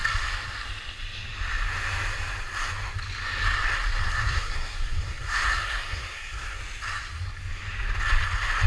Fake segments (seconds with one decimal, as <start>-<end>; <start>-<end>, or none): 4.0-6.6